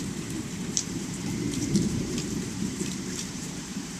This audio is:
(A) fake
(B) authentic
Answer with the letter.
A